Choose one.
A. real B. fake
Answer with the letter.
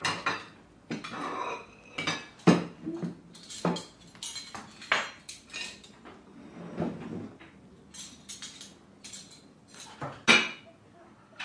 A